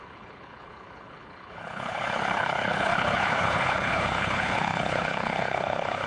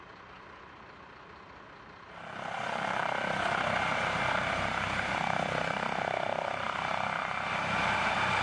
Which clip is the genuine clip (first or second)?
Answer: second